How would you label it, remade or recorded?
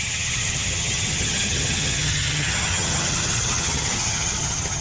remade